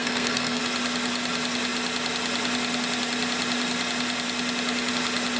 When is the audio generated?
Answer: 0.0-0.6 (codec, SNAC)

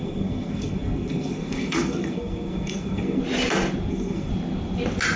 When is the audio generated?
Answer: 0.0-3.2 (codec, SNAC); 3.9-4.3

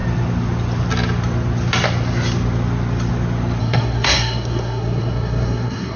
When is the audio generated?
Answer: 3.6-6.0 (codec, SNAC)

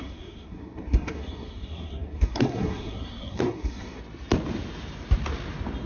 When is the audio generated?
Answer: 0.0-4.0 (codec, SNAC)

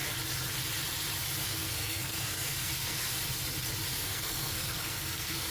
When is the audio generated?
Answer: 1.4-3.2 (codec, SNAC); 3.9-5.5

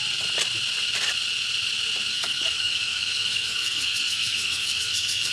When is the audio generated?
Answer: 2.1-5.3 (codec, SNAC)

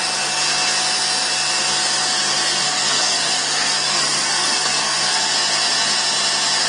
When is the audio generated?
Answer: 2.6-5.3 (codec, SNAC)

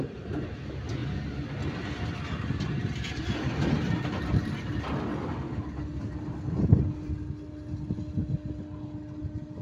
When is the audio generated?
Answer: none